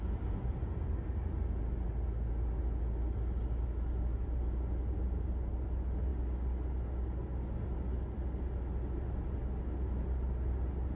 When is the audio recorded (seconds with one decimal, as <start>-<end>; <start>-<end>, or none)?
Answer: 0.0-10.9